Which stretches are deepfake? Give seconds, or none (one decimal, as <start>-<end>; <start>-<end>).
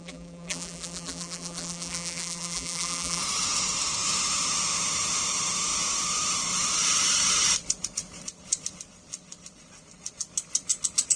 0.0-3.2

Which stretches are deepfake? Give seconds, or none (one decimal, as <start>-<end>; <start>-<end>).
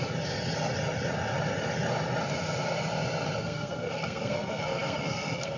3.4-5.6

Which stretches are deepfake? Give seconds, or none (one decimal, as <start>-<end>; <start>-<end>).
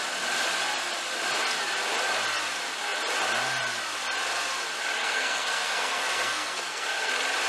5.0-7.1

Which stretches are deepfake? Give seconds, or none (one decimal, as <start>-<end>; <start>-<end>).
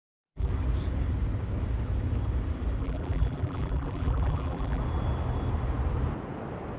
0.0-0.5; 2.8-4.8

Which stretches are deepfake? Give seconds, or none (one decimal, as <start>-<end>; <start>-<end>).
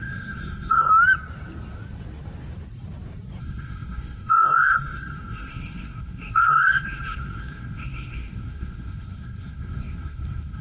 0.0-0.9; 3.4-10.6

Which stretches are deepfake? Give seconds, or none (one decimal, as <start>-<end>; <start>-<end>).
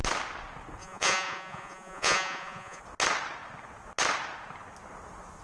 0.8-2.8